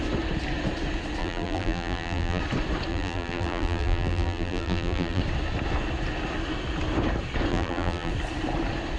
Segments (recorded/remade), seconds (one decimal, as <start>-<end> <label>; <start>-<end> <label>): 0.0-1.2 recorded; 1.2-2.4 remade; 2.4-2.9 recorded; 2.9-5.2 remade; 5.2-7.5 recorded; 7.5-8.1 remade; 8.1-9.0 recorded